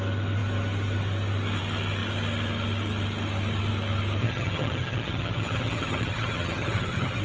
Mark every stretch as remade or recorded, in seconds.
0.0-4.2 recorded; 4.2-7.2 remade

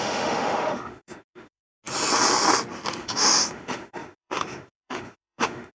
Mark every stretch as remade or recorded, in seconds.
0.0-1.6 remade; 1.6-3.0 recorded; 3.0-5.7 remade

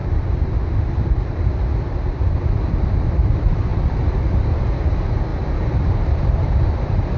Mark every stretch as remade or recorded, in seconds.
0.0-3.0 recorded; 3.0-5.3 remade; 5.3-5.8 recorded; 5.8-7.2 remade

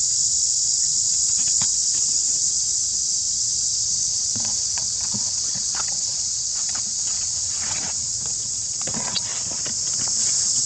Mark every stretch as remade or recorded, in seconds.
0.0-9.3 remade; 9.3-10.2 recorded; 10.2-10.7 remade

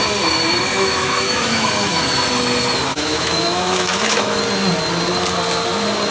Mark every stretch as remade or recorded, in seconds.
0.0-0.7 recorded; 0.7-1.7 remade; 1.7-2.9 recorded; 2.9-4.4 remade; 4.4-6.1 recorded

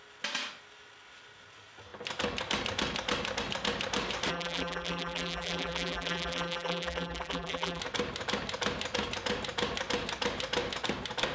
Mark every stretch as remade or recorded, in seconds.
0.0-4.3 recorded; 4.3-7.8 remade; 7.8-11.3 recorded

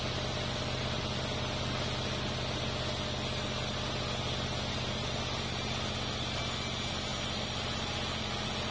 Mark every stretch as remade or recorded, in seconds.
0.0-8.7 recorded

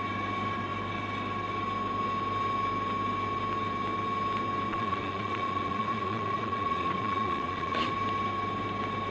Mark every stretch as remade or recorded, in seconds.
0.0-4.7 recorded; 4.7-7.9 remade; 7.9-9.1 recorded